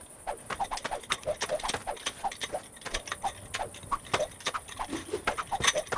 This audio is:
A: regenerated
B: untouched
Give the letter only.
B